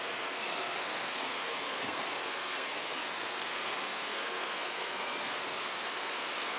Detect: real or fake fake